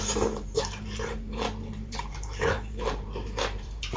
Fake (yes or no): yes